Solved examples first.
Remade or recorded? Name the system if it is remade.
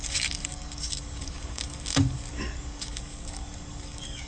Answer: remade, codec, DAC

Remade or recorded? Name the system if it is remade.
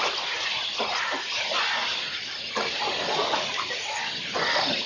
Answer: recorded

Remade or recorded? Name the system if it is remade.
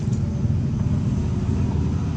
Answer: recorded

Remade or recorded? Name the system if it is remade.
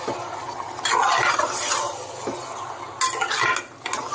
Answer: recorded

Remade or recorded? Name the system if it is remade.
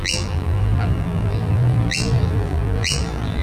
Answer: remade, vocoder, BigVGAN v2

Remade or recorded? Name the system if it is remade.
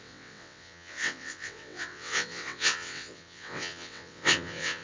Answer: remade, vocoder, WaveNeXt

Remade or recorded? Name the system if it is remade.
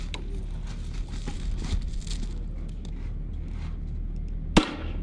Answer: recorded